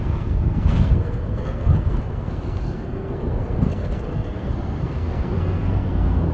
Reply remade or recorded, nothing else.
remade